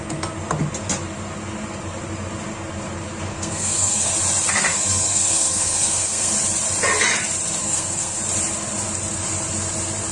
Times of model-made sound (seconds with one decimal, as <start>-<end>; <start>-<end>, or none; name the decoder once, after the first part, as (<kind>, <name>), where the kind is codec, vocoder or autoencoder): 3.3-4.1 (codec, SNAC); 4.7-6.3; 7.6-8.2